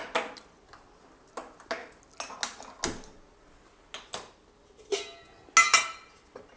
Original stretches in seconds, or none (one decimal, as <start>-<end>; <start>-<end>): 0.0-6.6

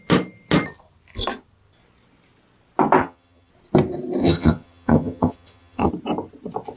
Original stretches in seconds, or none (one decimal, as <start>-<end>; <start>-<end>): 0.0-3.0; 3.5-4.2; 5.9-6.8

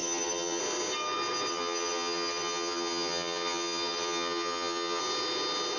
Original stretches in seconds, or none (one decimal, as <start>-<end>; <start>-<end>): 0.6-1.5; 5.0-5.8

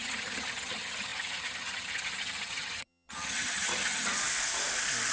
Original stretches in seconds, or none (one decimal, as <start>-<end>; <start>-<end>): 4.2-5.1